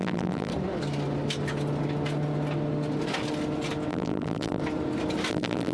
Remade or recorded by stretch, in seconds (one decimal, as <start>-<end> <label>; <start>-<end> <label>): 0.0-0.5 remade; 0.5-3.9 recorded; 3.9-4.6 remade; 4.6-5.3 recorded; 5.3-5.7 remade